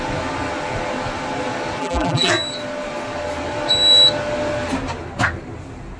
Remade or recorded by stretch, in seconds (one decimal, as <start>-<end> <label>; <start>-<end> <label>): 0.0-1.8 recorded; 1.8-2.3 remade; 2.3-6.0 recorded

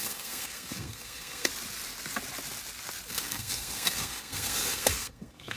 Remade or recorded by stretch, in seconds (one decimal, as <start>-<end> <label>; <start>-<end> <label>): 0.0-1.5 remade; 1.5-3.1 recorded; 3.1-5.6 remade